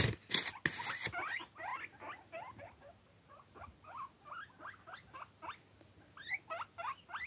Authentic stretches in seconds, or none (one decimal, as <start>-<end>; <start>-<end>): 0.0-7.3